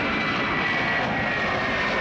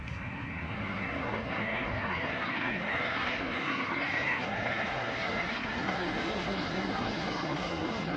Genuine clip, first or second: first